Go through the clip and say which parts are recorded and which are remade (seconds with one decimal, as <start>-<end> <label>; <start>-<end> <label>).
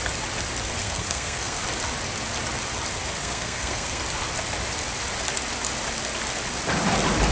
0.0-0.8 recorded; 0.8-1.6 remade; 1.6-3.2 recorded; 3.2-4.0 remade; 4.0-7.3 recorded